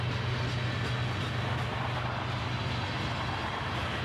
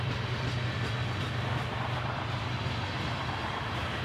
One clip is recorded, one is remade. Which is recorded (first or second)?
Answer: first